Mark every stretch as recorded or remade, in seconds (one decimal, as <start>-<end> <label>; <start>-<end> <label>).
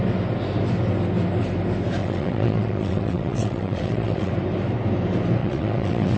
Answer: 0.0-2.0 recorded; 2.0-4.3 remade; 4.3-5.4 recorded; 5.4-6.2 remade